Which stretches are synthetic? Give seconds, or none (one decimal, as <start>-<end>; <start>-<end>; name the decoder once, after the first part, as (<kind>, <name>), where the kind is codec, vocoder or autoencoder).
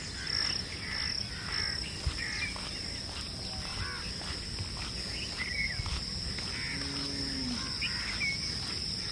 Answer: none